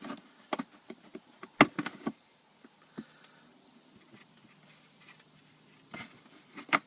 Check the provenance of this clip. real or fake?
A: real